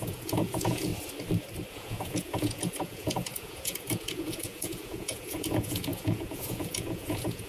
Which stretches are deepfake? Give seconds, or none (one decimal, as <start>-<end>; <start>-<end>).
0.0-0.9; 1.7-7.5